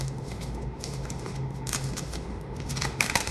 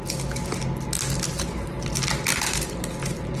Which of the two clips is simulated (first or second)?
first